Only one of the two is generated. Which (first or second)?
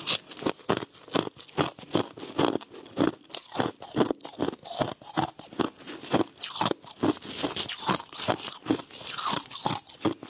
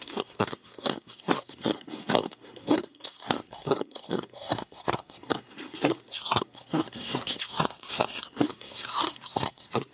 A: second